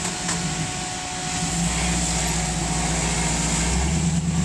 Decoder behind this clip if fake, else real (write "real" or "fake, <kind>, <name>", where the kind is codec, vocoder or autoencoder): real